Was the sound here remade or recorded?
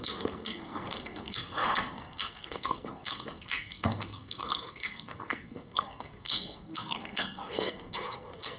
remade